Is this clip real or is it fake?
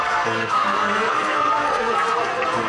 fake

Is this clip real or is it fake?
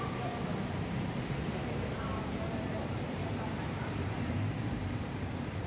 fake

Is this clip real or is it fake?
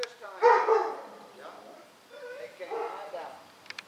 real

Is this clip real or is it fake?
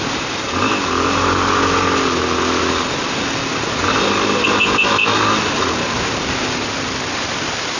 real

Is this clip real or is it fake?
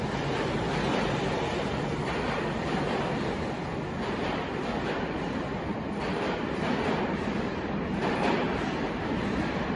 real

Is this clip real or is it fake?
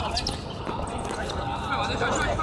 real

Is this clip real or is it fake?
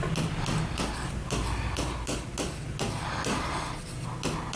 real